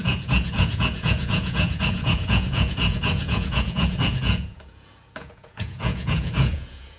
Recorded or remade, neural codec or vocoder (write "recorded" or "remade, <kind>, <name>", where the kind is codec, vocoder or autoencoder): remade, vocoder, Vocos